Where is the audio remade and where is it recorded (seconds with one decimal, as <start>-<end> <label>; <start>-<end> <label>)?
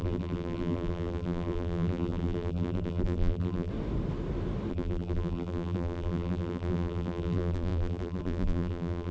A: 0.0-3.7 remade; 3.7-4.7 recorded; 4.7-9.1 remade